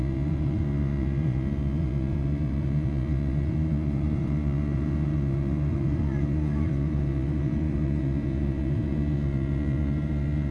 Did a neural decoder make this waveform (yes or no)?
yes